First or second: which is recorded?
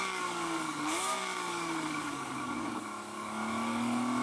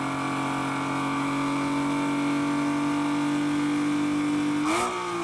second